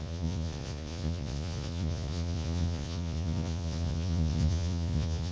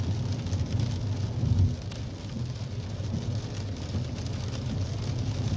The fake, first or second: first